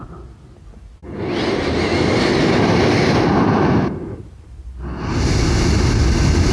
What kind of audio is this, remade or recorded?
recorded